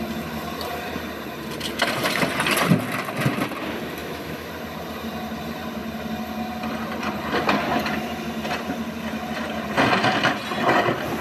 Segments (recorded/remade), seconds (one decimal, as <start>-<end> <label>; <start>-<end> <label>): 0.0-4.0 recorded; 4.0-4.5 remade; 4.5-11.2 recorded